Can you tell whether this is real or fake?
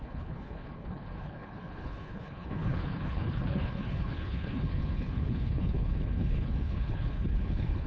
fake